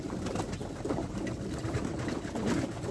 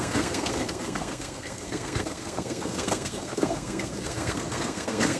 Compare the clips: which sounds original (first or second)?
first